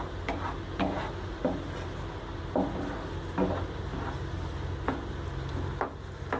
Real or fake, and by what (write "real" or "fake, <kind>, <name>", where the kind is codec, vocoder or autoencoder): real